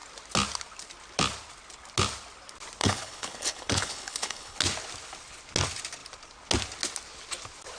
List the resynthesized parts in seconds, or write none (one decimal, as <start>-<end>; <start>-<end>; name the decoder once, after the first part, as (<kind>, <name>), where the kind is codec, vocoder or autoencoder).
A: 2.8-4.6 (codec, HILCodec)